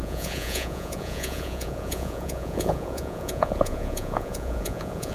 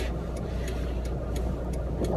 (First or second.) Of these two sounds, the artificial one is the first